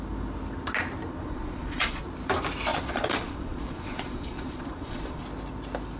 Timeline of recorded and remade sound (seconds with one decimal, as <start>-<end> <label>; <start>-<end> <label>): 0.0-1.2 recorded; 1.2-2.0 remade; 2.0-2.7 recorded; 2.7-5.2 remade; 5.2-6.0 recorded